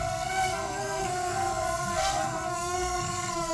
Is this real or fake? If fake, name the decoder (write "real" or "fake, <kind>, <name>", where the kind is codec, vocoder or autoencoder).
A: fake, codec, SNAC